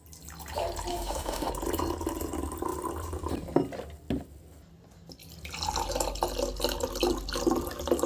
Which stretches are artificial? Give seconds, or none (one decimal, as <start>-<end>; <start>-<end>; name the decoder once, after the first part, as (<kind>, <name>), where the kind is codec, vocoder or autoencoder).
0.9-1.5 (autoencoder, DAC-VAE)